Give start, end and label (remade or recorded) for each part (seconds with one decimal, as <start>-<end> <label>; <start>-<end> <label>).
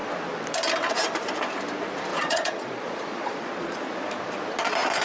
0.0-2.1 recorded; 2.1-3.8 remade; 3.8-5.0 recorded